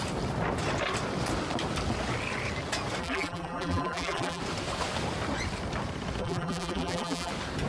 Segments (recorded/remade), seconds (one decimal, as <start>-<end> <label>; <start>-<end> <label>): 0.0-3.0 recorded; 3.0-4.4 remade; 4.4-6.2 recorded; 6.2-7.3 remade; 7.3-7.7 recorded